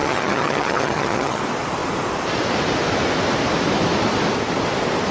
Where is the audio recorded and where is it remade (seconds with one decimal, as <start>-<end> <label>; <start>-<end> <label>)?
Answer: 0.0-1.4 remade; 1.4-5.1 recorded